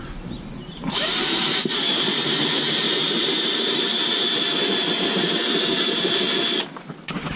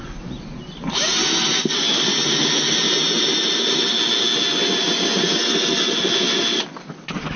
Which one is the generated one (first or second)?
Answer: first